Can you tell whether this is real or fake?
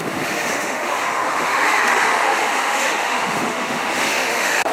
fake